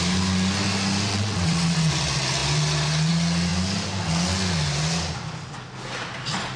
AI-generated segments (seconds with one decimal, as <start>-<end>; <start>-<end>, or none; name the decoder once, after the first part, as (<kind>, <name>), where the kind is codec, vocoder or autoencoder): 1.1-1.9 (vocoder, WaveNeXt)